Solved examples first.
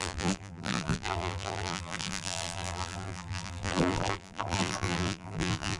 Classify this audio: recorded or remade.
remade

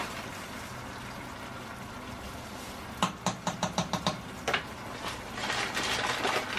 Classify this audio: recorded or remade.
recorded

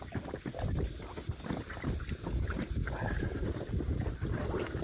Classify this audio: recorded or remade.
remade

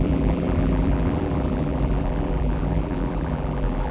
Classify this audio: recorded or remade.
remade